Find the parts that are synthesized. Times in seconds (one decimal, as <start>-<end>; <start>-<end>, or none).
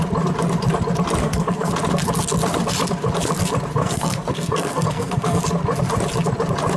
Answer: 1.2-1.7; 3.8-5.4